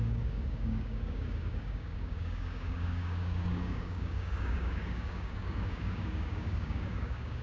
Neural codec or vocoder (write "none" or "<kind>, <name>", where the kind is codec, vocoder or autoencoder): codec, DAC